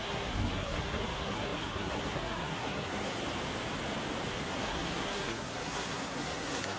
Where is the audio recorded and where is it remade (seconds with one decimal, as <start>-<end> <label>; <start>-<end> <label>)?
0.0-3.2 remade; 3.2-4.4 recorded; 4.4-6.8 remade